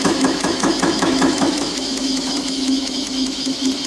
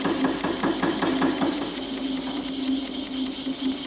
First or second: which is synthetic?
first